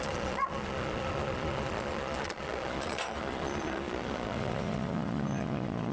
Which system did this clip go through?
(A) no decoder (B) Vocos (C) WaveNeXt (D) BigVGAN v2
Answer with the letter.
B